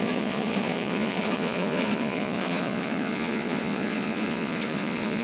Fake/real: fake